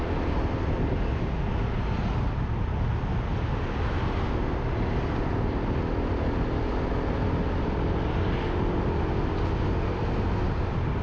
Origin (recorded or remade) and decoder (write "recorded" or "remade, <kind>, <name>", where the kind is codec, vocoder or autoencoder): recorded